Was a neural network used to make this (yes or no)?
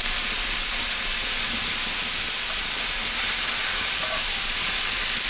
no